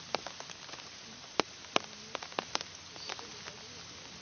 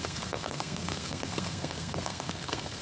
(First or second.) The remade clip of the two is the second